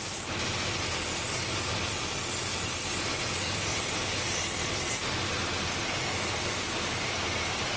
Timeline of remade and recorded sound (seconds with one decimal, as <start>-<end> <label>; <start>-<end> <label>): 0.0-5.0 recorded; 5.0-7.8 remade